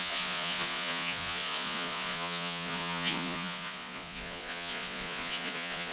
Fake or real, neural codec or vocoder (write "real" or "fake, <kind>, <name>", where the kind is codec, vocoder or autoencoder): fake, vocoder, Vocos